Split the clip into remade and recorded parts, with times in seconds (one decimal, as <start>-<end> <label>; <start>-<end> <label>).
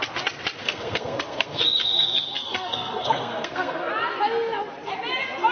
0.0-0.6 recorded; 0.6-3.9 remade; 3.9-5.5 recorded